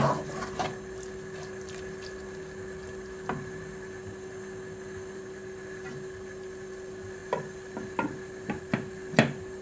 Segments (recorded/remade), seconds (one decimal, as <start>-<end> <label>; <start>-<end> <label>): 0.0-9.6 recorded